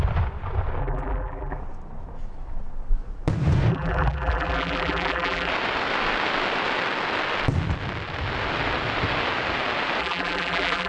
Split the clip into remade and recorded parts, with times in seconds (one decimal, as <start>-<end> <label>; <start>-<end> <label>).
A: 0.0-0.8 recorded; 0.8-1.6 remade; 1.6-3.7 recorded; 3.7-5.5 remade; 5.5-10.0 recorded; 10.0-10.9 remade